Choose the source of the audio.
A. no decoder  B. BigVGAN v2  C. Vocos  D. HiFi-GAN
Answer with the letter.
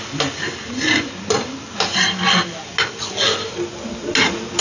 A